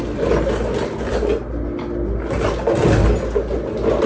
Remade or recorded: recorded